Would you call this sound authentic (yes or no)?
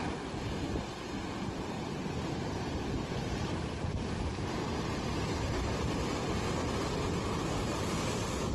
yes